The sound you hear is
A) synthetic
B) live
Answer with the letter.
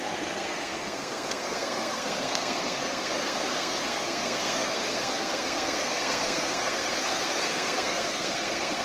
A